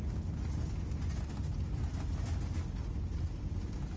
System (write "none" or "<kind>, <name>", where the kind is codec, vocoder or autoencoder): none